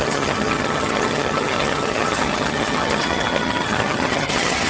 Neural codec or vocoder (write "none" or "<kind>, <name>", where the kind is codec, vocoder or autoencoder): vocoder, HiFi-GAN